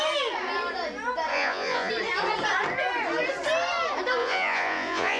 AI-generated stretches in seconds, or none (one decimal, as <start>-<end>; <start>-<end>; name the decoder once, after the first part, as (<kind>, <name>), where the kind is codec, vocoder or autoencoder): 1.3-1.9 (vocoder, Vocos); 4.2-5.2